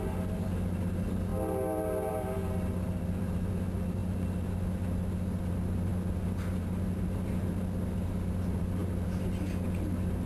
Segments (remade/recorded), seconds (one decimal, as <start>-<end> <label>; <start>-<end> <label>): 0.0-4.0 remade; 4.0-5.5 recorded; 5.5-5.9 remade; 5.9-6.6 recorded; 6.6-8.8 remade; 8.8-10.3 recorded